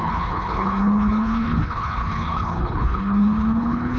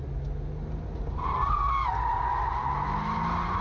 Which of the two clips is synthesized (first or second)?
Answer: first